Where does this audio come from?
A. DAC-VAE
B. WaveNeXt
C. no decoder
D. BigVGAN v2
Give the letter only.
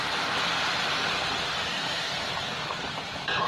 D